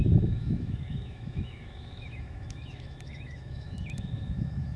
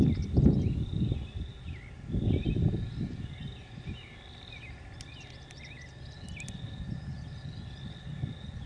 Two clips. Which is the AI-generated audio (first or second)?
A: first